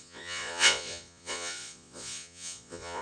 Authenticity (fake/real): fake